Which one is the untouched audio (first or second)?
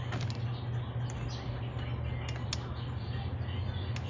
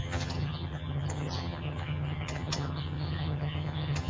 first